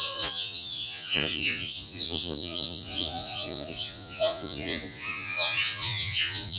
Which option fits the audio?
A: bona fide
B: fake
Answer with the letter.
B